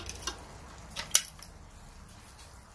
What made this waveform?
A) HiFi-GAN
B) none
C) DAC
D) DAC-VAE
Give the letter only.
B